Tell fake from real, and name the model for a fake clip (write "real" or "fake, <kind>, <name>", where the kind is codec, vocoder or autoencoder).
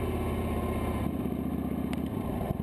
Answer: real